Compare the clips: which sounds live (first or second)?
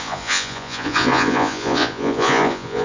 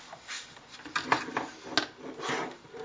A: second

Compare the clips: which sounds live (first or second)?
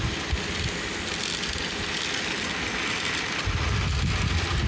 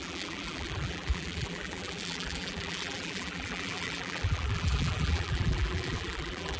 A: first